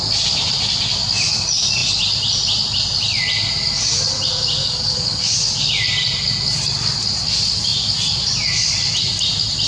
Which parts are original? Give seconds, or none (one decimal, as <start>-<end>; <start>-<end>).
0.0-4.6; 5.2-9.7